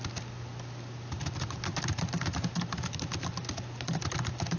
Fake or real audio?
real